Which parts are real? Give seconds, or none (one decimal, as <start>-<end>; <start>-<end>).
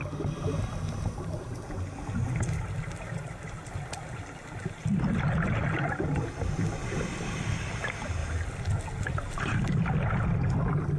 0.0-11.0